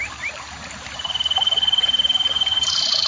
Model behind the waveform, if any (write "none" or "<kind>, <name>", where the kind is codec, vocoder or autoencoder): vocoder, BigVGAN v2